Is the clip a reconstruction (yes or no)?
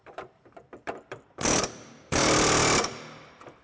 yes